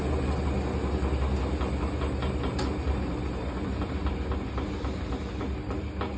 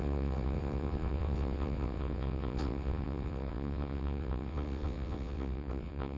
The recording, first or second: first